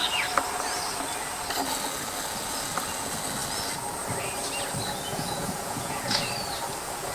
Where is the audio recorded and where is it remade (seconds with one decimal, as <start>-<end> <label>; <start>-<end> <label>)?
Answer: 0.0-5.1 recorded; 5.1-6.3 remade; 6.3-7.1 recorded